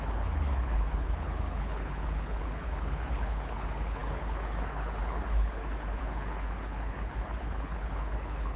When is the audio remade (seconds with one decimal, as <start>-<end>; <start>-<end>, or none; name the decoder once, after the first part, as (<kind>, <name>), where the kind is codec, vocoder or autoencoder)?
0.0-8.6 (codec, HILCodec)